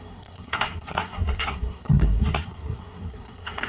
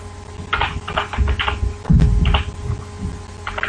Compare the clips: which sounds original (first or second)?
second